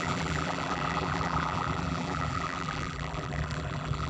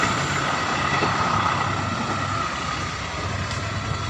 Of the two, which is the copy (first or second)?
first